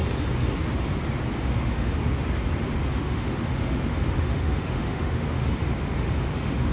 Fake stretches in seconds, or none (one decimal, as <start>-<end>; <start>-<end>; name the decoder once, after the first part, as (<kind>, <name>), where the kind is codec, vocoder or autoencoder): 1.4-2.0 (autoencoder, DAC-VAE); 2.9-6.7

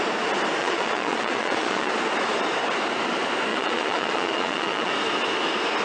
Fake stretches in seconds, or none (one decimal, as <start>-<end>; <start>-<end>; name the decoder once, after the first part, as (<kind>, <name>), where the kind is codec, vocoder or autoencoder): 0.6-1.9 (vocoder, Vocos); 3.5-4.9

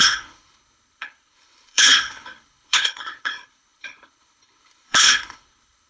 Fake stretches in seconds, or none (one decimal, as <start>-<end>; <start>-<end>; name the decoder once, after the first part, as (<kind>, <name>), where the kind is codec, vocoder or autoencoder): 0.0-5.9 (codec, HILCodec)

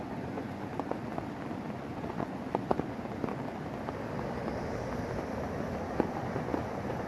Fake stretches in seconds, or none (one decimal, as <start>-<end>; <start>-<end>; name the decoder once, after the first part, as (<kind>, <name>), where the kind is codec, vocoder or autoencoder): 0.0-1.0 (vocoder, Vocos); 1.7-2.7; 6.2-7.1

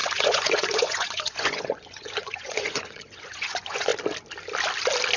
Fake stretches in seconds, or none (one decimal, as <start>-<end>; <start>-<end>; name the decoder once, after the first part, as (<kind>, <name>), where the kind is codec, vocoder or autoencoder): 0.0-3.9 (vocoder, Vocos)

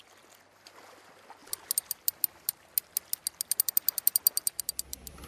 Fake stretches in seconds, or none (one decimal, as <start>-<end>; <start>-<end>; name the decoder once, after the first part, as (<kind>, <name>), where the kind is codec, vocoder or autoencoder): none

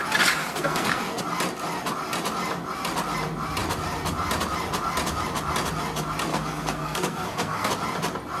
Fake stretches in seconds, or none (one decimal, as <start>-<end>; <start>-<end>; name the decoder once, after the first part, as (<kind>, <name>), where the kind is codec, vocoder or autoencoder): 0.4-1.2 (codec, SNAC); 6.3-7.7

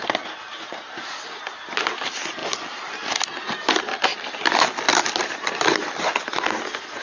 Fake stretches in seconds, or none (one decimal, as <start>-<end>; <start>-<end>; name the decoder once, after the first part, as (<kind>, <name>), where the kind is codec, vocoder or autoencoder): none